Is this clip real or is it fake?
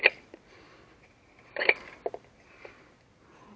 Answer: real